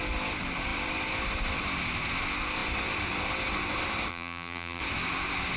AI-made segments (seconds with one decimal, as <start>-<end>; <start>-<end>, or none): 4.1-4.8